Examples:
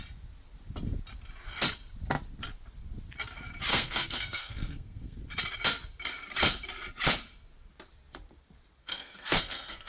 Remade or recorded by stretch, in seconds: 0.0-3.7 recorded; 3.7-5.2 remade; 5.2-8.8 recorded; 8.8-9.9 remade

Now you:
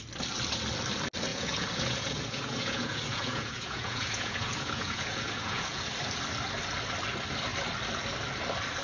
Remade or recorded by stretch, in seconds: 0.0-1.3 recorded; 1.3-5.8 remade; 5.8-8.8 recorded

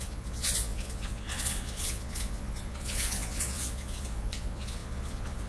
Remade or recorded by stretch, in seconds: 0.0-5.5 remade

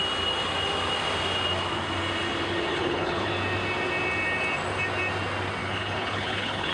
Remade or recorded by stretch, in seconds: 0.0-2.7 recorded; 2.7-3.3 remade; 3.3-5.6 recorded; 5.6-6.7 remade

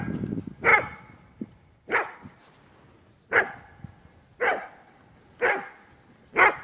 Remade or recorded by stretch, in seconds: 0.0-0.7 recorded; 0.7-3.4 remade; 3.4-6.6 recorded